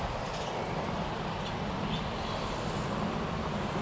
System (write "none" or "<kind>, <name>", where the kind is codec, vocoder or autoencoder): none